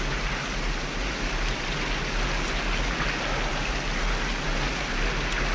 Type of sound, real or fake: real